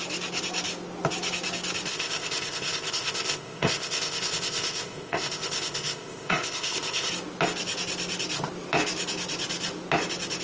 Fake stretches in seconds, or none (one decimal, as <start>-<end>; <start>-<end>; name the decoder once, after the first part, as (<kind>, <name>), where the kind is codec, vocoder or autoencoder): 1.9-7.1 (codec, ZipCodec)